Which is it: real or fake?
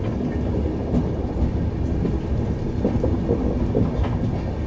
real